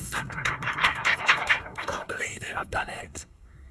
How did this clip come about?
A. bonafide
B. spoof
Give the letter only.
B